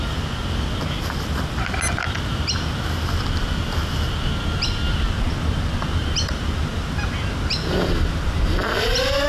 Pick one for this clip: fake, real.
real